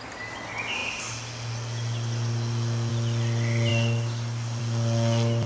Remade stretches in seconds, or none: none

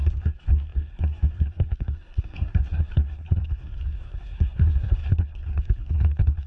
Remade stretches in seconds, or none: 0.0-6.5 (codec, SNAC)

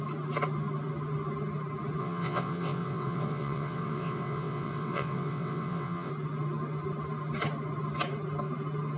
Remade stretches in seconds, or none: 2.0-6.1 (vocoder, WaveNeXt)

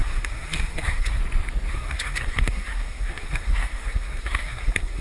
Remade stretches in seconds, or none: 0.0-1.2 (codec, SNAC); 1.7-5.0

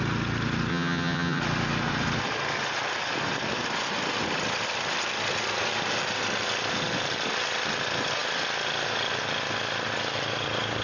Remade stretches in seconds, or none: 0.7-1.4 (vocoder, HiFi-GAN)

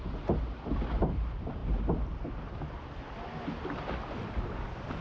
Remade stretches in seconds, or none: none

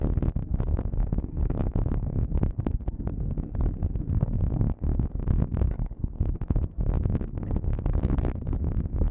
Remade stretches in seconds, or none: 0.0-3.1 (codec, SNAC); 4.1-9.1

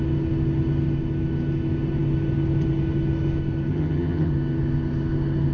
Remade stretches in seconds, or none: 3.7-4.3 (vocoder, HiFi-GAN)